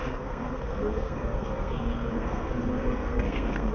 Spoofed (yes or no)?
yes